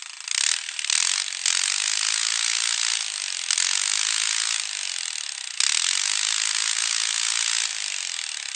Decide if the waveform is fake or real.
real